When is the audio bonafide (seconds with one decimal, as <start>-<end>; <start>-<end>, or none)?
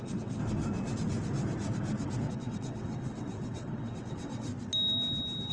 0.4-2.3; 4.5-5.5